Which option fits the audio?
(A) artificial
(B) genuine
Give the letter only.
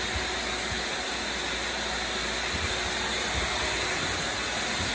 B